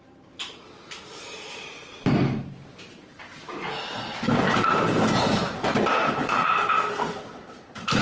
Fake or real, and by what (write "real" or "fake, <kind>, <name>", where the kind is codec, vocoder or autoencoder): fake, vocoder, BigVGAN v2